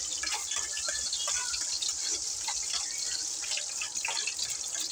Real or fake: real